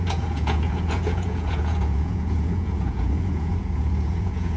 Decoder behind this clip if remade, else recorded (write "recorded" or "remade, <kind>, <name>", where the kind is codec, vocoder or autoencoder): remade, vocoder, Vocos